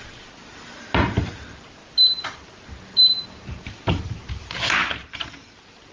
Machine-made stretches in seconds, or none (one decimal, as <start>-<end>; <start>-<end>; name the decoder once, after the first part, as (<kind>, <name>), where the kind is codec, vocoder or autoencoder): none

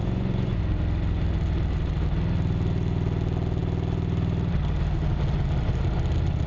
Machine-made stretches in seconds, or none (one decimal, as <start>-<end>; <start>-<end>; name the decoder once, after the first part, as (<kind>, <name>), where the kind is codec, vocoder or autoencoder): 0.0-0.6 (vocoder, Vocos)

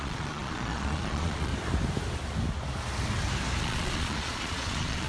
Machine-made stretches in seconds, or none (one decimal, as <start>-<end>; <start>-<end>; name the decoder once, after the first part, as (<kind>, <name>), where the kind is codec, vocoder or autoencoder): 0.0-1.5 (vocoder, Vocos); 3.6-5.1

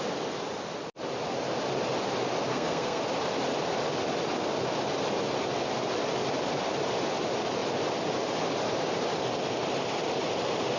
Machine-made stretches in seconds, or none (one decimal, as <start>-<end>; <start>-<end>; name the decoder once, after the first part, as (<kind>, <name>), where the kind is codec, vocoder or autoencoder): 2.5-3.0 (codec, SNAC)

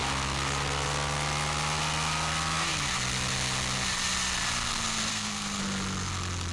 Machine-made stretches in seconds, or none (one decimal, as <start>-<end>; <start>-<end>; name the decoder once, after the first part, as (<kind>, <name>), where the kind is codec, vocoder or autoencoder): 5.1-5.6 (codec, SNAC)

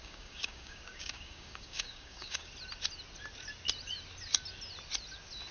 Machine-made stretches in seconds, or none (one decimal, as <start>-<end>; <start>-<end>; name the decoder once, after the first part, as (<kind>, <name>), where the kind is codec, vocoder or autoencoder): 0.0-2.5 (codec, DAC)

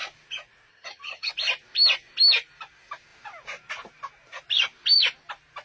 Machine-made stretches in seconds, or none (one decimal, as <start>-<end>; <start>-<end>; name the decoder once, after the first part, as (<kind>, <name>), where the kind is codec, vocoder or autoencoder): 0.7-1.3 (vocoder, HiFi-GAN)